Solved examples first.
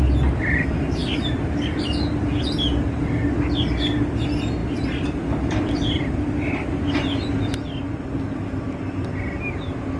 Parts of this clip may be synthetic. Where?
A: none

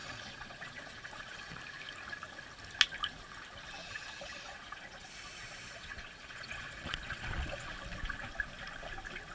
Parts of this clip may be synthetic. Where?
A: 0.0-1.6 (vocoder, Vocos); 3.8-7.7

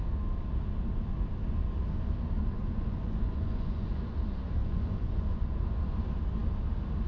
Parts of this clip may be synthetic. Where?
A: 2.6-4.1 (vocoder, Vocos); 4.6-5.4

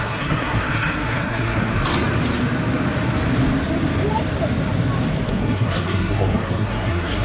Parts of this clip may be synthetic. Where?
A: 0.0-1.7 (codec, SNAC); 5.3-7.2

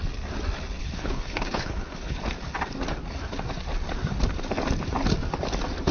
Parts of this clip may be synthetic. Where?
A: 0.8-2.2 (codec, HILCodec)

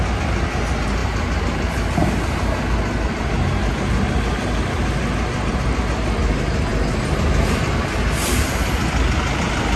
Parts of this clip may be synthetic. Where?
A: none